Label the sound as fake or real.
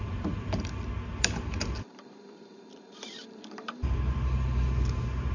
fake